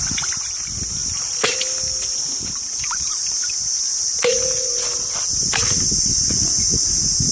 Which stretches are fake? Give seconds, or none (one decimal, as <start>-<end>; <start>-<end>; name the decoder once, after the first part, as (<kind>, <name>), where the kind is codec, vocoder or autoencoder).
none